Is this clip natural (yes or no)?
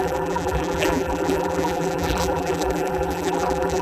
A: no